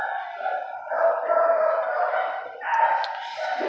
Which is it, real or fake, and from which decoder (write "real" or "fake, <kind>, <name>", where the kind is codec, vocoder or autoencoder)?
real